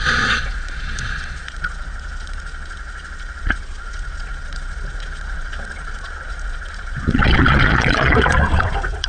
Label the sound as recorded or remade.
remade